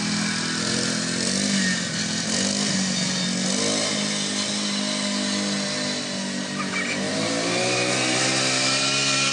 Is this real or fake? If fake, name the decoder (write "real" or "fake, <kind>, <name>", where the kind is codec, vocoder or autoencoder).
real